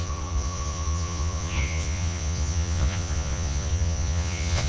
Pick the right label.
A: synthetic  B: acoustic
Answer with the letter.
A